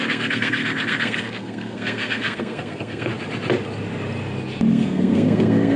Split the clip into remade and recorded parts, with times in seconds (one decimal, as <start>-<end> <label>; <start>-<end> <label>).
0.0-3.1 remade; 3.1-4.7 recorded; 4.7-5.8 remade